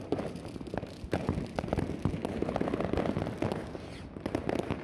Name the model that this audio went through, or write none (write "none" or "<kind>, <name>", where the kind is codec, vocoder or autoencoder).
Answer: none